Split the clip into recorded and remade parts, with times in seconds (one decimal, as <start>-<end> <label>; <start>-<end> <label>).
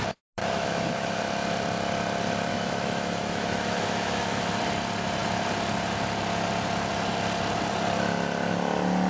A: 0.0-0.4 recorded; 0.4-1.2 remade; 1.2-2.5 recorded; 2.5-4.6 remade; 4.6-9.1 recorded